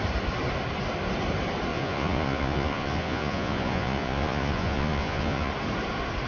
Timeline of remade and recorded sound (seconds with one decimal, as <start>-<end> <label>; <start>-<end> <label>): 0.0-1.7 recorded; 1.7-5.5 remade; 5.5-6.3 recorded